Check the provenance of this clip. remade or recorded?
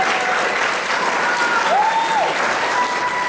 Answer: recorded